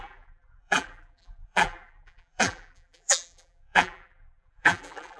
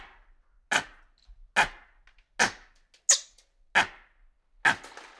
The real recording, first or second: second